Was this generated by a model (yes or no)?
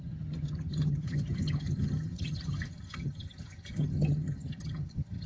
yes